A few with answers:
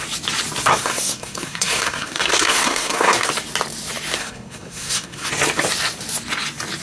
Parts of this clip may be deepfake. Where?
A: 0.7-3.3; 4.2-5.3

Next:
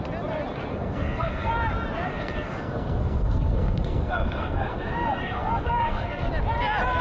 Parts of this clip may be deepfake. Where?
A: 0.7-1.5; 2.1-6.3

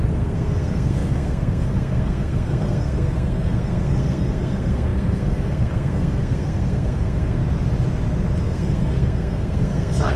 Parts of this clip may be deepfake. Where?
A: 0.0-7.4; 8.4-10.2